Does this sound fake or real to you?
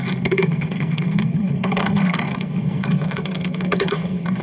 fake